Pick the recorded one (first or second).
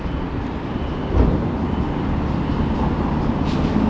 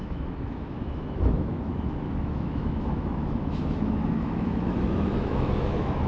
first